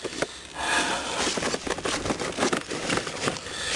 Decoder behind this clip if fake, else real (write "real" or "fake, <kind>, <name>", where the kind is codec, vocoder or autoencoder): real